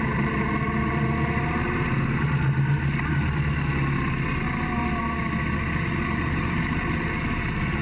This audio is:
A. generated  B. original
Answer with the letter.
B